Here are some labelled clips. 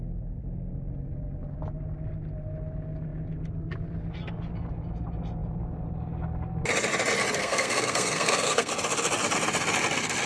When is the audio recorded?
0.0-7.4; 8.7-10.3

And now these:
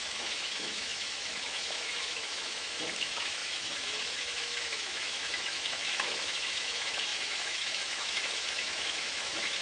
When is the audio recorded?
none